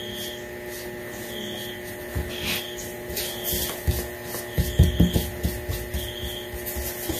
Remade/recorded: recorded